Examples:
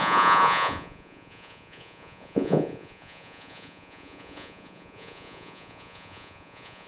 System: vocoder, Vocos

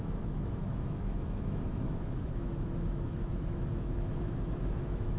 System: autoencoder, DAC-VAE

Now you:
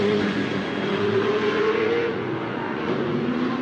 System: vocoder, Vocos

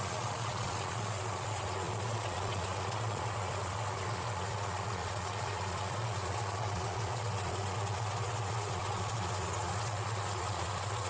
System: vocoder, Vocos